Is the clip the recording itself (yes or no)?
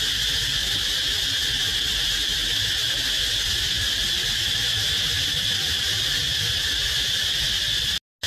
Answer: yes